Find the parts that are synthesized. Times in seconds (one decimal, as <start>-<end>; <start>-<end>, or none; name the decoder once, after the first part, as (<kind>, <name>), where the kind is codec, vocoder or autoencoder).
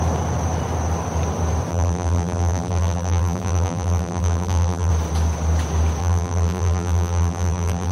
1.7-4.9 (vocoder, BigVGAN v2); 6.0-7.9